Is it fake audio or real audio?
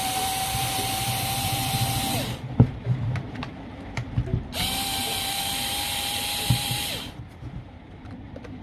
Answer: fake